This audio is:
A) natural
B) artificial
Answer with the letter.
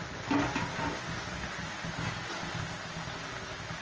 A